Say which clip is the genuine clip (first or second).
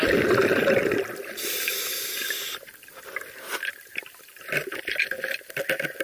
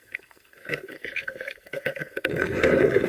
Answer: first